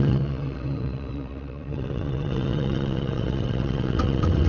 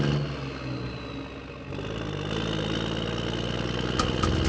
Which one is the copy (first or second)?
first